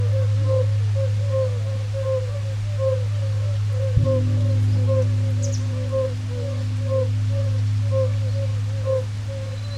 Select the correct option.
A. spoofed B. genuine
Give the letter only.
B